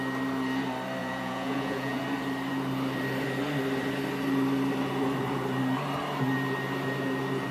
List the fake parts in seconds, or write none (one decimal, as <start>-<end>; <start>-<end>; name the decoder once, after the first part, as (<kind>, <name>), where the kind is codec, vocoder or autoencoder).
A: 1.0-2.0 (vocoder, Vocos)